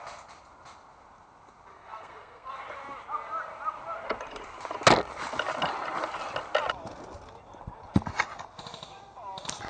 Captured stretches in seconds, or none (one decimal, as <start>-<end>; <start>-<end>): 0.0-1.7; 2.5-9.7